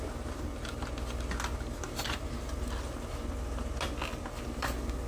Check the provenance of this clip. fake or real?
real